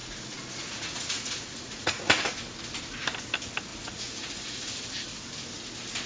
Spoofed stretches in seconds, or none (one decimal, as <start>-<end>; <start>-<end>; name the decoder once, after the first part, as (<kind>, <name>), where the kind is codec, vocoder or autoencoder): 0.0-2.3 (vocoder, Vocos); 3.7-4.8